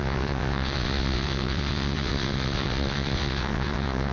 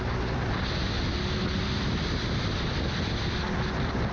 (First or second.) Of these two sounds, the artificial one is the first